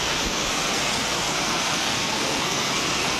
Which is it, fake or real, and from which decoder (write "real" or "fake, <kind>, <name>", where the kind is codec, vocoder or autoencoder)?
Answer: fake, codec, SNAC